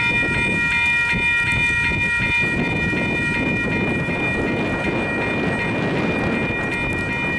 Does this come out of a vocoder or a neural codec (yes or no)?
no